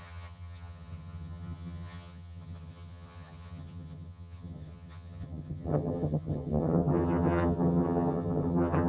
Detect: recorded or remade remade